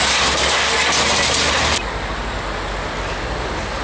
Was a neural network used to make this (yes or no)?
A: no